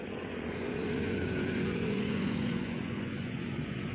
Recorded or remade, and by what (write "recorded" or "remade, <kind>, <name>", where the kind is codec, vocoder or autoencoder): remade, vocoder, Vocos